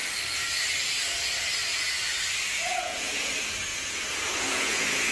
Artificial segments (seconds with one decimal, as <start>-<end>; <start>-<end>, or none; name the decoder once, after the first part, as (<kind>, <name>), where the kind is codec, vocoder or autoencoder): 2.7-3.3 (vocoder, Vocos); 3.7-5.1

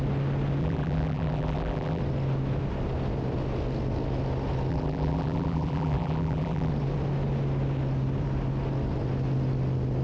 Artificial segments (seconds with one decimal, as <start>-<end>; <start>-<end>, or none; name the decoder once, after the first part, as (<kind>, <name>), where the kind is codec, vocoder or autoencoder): 0.6-2.0 (vocoder, BigVGAN v2); 4.7-6.7

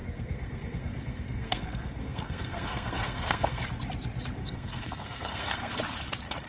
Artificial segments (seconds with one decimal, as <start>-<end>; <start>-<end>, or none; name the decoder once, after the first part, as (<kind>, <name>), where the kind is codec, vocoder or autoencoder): 0.0-3.6 (codec, SNAC); 4.4-5.7

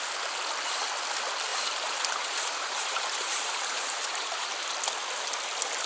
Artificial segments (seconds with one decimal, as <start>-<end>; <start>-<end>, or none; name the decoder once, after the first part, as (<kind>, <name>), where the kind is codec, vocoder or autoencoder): 1.5-4.5 (vocoder, BigVGAN v2)

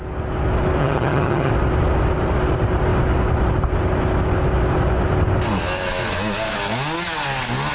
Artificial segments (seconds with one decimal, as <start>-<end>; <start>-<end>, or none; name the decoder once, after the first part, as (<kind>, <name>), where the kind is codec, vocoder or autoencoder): 0.8-1.5 (vocoder, HiFi-GAN)

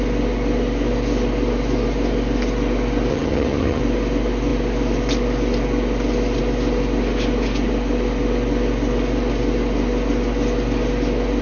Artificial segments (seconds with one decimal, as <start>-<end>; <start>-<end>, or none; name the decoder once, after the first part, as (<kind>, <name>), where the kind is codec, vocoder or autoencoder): 3.1-3.8 (vocoder, HiFi-GAN)